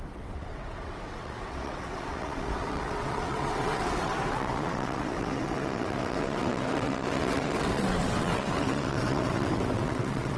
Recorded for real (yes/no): no